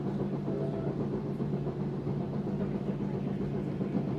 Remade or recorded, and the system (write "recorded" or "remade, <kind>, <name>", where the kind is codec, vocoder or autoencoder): recorded